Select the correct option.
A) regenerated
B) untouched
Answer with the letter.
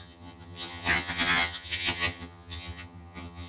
A